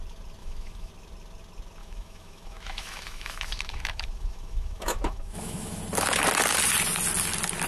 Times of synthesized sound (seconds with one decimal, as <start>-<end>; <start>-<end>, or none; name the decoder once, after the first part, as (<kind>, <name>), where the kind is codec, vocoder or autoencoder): 0.4-0.9 (autoencoder, DAC-VAE); 1.8-5.8

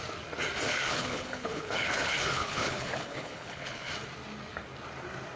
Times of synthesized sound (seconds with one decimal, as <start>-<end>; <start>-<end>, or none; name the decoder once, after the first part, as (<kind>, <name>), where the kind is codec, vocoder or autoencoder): 0.7-3.9 (codec, HILCodec)

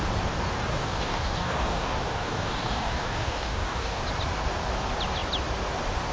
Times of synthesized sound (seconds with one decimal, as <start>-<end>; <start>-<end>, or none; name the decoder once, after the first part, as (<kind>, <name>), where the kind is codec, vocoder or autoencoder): 0.7-4.0 (codec, DAC)

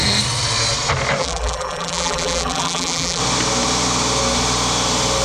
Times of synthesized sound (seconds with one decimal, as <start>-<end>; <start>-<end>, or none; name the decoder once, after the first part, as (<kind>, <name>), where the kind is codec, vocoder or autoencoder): 1.2-3.2 (vocoder, BigVGAN v2)

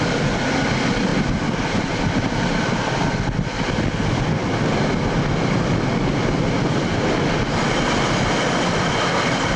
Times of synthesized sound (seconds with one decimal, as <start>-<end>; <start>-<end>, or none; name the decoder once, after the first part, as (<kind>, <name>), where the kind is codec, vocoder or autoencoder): none